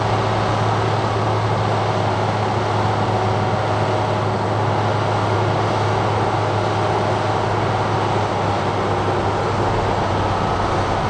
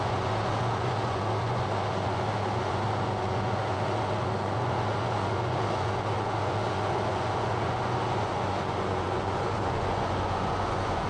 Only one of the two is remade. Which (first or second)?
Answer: second